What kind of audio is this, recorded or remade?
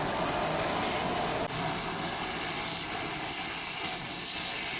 recorded